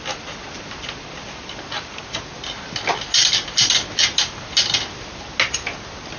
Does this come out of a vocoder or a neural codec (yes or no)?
no